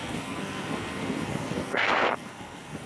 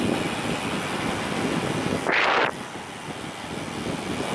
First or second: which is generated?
first